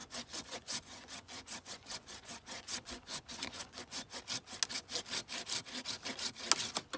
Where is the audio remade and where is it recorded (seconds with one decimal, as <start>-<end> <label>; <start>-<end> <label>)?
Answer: 0.0-4.2 remade; 4.2-7.0 recorded